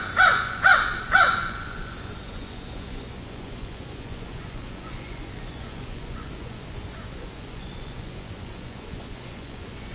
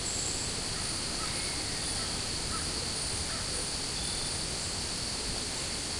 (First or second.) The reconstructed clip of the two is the first